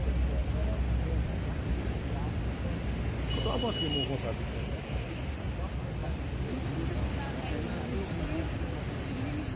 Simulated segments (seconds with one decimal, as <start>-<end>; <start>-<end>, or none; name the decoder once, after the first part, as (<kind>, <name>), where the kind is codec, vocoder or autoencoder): 0.4-2.2 (vocoder, BigVGAN v2); 6.0-8.1